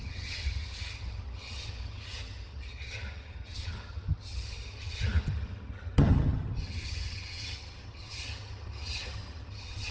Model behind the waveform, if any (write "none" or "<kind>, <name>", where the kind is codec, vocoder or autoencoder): vocoder, HiFi-GAN